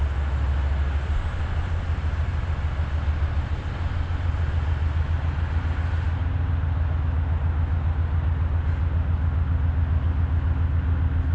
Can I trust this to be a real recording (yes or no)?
yes